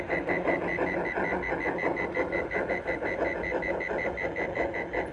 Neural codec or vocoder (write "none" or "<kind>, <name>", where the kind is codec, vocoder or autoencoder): none